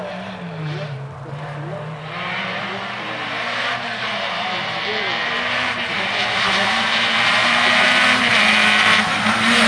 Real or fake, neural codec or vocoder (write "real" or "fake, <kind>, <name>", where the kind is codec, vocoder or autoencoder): fake, vocoder, BigVGAN v2